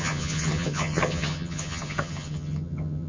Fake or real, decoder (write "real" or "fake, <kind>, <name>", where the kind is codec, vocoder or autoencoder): fake, vocoder, HiFi-GAN